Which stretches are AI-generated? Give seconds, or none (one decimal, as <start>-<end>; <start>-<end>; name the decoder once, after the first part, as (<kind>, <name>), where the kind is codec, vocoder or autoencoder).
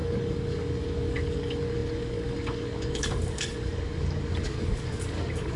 0.0-5.6 (codec, DAC)